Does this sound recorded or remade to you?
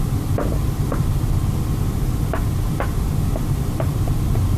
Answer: remade